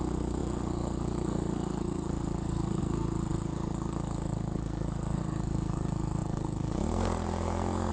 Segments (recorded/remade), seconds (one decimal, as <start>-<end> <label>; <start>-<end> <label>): 0.0-7.9 remade